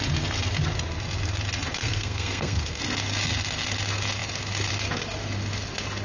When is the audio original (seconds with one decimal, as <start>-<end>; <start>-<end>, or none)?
0.0-1.8; 2.8-6.0